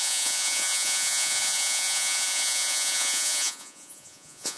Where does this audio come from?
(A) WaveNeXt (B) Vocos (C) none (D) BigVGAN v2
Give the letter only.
B